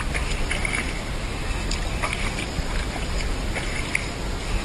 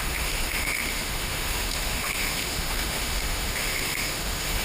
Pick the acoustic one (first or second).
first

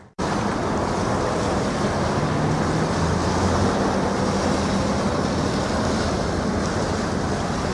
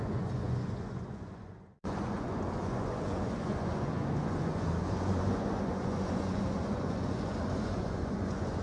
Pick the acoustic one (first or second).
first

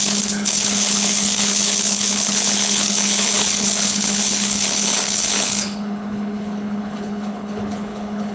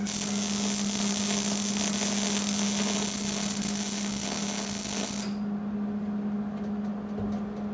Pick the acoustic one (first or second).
second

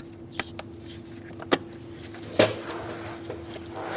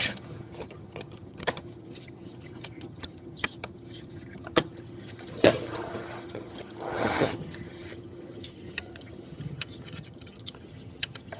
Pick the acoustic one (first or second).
first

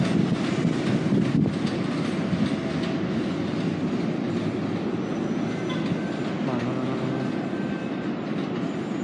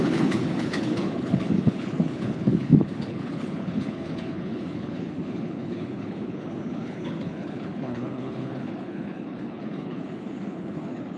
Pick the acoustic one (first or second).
first